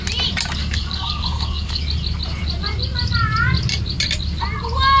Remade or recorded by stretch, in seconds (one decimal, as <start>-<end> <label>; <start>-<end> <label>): 0.0-0.6 recorded; 0.6-1.8 remade; 1.8-5.0 recorded